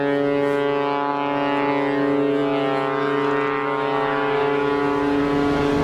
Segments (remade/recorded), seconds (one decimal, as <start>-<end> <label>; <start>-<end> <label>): 0.0-5.8 recorded